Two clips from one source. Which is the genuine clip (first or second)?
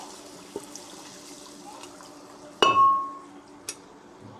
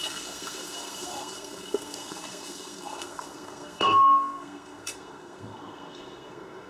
first